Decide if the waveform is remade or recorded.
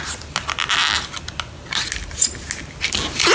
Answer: recorded